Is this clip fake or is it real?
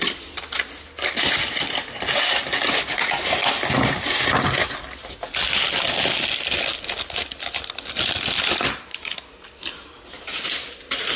real